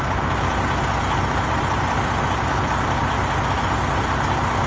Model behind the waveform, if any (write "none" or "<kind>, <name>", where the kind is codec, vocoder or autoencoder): none